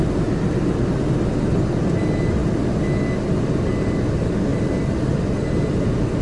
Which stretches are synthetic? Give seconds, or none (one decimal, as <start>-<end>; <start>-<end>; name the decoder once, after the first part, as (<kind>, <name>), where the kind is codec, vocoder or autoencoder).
none